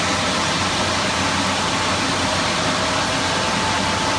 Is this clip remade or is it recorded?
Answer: recorded